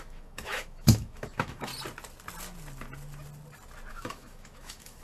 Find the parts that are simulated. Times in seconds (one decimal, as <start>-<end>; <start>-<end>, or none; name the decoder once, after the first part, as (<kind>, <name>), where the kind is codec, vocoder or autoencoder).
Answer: 0.0-1.7 (autoencoder, DAC-VAE); 3.9-5.0